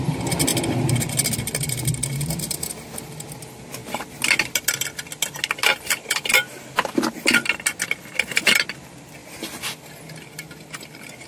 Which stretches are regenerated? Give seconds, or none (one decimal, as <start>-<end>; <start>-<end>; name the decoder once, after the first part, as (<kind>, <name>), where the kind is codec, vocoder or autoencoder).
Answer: 0.5-3.4 (vocoder, BigVGAN v2); 5.7-7.0; 9.2-9.9